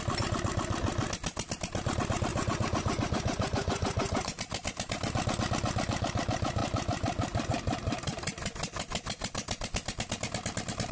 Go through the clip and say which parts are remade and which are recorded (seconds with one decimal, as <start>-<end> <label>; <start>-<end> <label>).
0.0-2.3 recorded; 2.3-4.4 remade; 4.4-10.9 recorded